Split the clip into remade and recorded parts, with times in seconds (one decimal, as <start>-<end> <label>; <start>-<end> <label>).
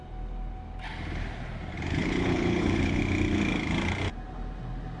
0.0-1.9 recorded; 1.9-3.0 remade; 3.0-5.0 recorded